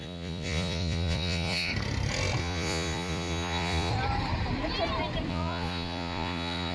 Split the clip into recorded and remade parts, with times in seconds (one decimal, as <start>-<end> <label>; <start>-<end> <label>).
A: 0.0-1.7 remade; 1.7-2.4 recorded; 2.4-3.9 remade; 3.9-5.3 recorded; 5.3-6.7 remade